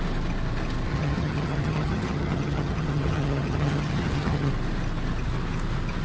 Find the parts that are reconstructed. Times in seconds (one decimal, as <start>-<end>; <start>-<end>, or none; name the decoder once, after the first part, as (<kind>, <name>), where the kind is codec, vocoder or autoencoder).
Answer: 0.9-4.5 (vocoder, HiFi-GAN)